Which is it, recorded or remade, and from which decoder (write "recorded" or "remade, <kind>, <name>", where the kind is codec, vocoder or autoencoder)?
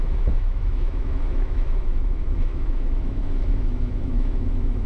remade, autoencoder, DAC-VAE